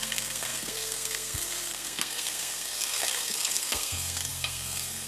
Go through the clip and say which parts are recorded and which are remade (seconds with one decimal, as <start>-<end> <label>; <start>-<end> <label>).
0.0-5.1 remade